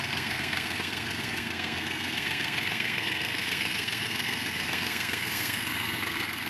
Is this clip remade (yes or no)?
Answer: yes